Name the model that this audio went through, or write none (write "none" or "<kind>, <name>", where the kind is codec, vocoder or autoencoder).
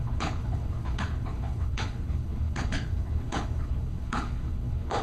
codec, HILCodec